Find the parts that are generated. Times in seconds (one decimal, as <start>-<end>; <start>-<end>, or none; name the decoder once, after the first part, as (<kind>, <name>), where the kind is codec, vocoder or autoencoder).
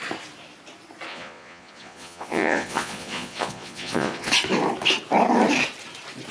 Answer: 1.1-4.3 (vocoder, Vocos)